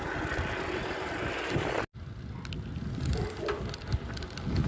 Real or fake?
real